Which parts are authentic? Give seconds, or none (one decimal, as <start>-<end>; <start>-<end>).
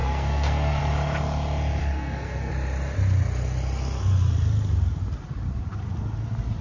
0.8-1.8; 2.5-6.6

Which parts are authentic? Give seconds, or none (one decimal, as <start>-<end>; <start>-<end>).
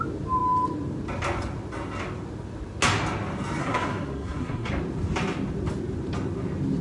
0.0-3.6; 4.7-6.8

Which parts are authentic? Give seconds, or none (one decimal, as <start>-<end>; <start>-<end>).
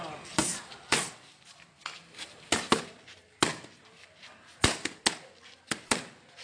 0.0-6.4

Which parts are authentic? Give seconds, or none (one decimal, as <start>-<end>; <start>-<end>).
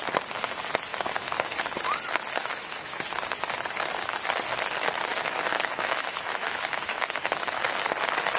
0.0-0.9; 1.6-2.4; 3.0-5.1; 7.8-8.4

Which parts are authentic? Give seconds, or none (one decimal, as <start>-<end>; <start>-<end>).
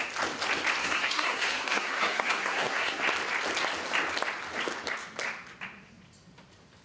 0.0-0.8; 3.0-6.8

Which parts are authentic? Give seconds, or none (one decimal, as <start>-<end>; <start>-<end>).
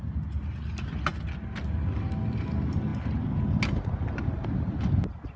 0.0-5.4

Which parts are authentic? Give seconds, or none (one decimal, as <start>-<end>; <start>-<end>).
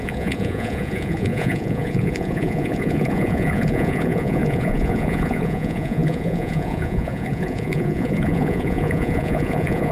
none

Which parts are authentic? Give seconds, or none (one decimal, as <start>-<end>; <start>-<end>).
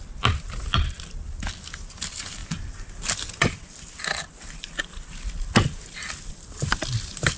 0.0-7.4